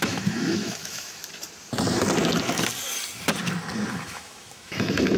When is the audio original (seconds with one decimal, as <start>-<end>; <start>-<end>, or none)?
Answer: 1.2-3.9